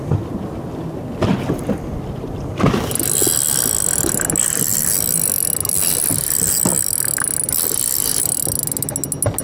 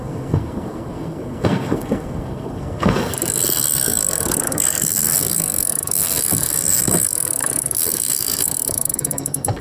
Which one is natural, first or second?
first